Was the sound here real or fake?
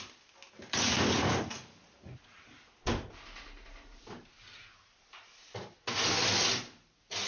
real